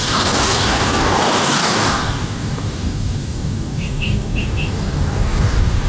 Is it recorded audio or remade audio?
remade